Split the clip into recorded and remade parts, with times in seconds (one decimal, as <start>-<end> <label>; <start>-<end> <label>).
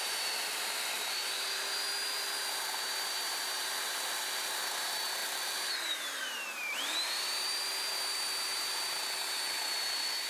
0.0-10.3 remade